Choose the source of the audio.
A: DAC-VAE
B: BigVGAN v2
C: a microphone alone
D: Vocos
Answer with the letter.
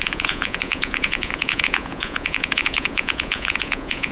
D